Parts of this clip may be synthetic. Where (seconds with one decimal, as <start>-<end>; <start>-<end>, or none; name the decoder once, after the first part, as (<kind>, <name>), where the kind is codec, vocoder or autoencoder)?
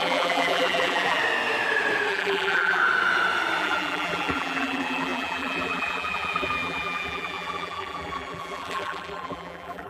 0.0-1.2 (vocoder, BigVGAN v2); 2.1-2.8; 3.6-9.9